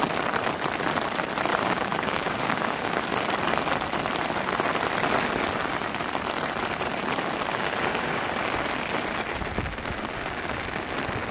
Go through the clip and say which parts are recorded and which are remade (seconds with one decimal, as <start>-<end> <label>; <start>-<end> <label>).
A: 0.0-1.5 recorded; 1.5-3.0 remade; 3.0-7.5 recorded; 7.5-8.2 remade; 8.2-11.3 recorded